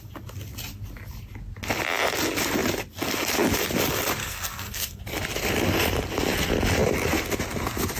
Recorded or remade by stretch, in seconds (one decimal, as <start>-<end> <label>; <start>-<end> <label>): 0.0-4.2 recorded; 4.2-5.0 remade; 5.0-8.0 recorded

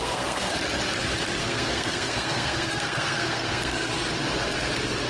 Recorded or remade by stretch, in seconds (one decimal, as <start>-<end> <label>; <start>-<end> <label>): 0.0-0.5 remade; 0.5-1.4 recorded; 1.4-3.9 remade; 3.9-5.1 recorded

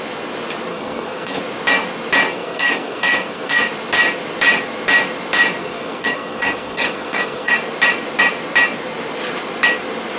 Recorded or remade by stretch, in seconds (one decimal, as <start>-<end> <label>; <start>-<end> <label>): 0.0-0.7 recorded; 0.7-1.4 remade; 1.4-2.3 recorded; 2.3-3.7 remade; 3.7-5.6 recorded; 5.6-7.5 remade; 7.5-10.2 recorded